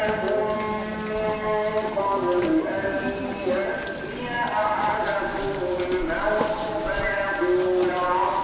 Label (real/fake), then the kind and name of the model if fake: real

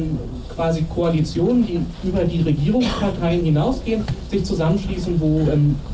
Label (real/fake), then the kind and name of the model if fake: real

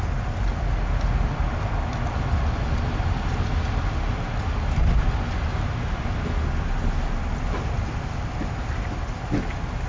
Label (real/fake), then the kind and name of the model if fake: real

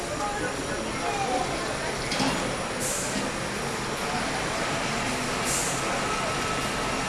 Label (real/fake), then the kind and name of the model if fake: real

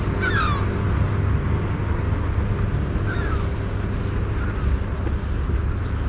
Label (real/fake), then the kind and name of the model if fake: real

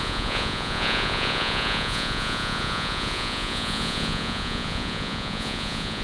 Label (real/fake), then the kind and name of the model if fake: fake, vocoder, Vocos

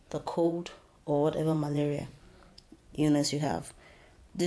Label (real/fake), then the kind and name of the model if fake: fake, vocoder, Vocos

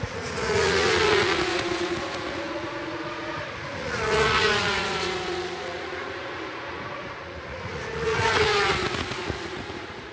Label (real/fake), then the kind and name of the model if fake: fake, vocoder, Vocos